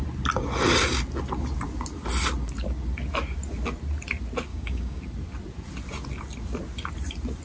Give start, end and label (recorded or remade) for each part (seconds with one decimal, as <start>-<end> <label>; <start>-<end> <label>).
0.0-4.5 recorded; 4.5-5.0 remade; 5.0-7.4 recorded